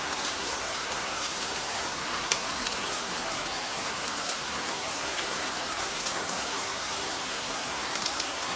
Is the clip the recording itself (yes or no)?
no